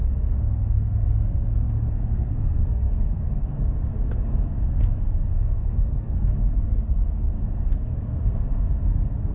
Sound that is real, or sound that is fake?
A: fake